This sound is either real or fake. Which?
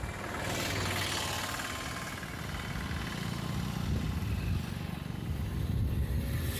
real